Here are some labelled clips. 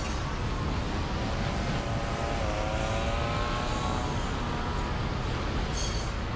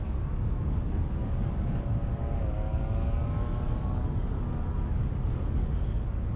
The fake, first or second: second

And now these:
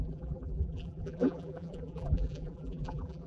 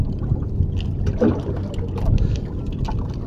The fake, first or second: first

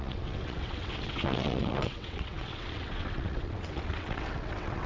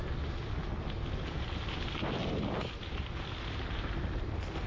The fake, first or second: first